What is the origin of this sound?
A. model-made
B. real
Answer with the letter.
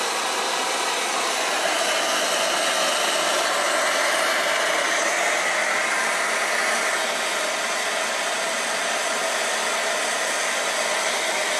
B